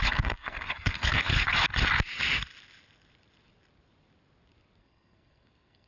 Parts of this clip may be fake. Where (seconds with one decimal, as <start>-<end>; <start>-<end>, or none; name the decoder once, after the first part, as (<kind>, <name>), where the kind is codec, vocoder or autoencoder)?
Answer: 0.0-1.3 (codec, SNAC); 4.8-5.9